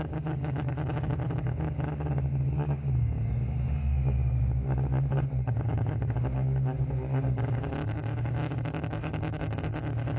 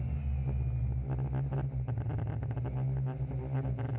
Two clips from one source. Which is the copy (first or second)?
first